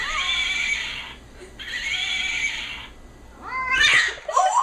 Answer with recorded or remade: recorded